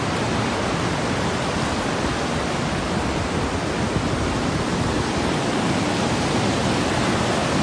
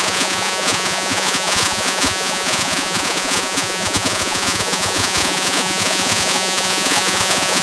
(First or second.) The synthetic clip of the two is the second